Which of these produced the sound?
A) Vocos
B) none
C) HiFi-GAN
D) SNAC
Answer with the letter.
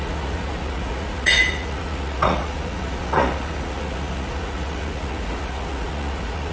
A